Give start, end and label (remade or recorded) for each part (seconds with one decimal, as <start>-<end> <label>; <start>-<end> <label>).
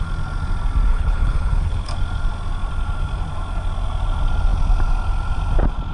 0.0-0.9 recorded; 0.9-1.9 remade; 1.9-5.9 recorded